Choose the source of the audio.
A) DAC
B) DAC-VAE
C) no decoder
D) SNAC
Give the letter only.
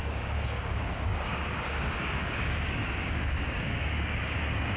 A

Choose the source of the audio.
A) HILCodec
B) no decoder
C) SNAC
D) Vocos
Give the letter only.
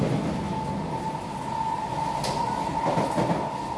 B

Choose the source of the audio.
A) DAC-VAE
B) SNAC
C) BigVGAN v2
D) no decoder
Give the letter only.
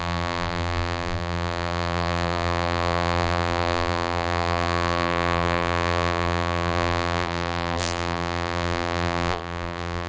C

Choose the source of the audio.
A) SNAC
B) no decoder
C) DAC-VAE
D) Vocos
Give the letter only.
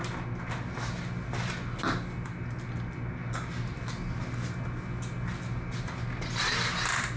B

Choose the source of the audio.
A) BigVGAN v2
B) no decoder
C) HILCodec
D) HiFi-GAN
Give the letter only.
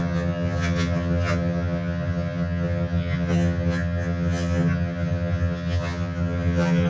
D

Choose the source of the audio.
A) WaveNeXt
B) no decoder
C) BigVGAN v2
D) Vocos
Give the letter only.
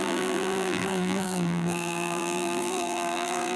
C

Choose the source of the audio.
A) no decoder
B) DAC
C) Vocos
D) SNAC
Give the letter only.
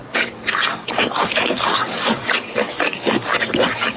B